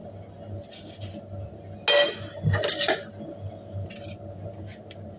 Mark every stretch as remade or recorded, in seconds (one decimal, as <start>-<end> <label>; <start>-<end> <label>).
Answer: 0.0-5.2 recorded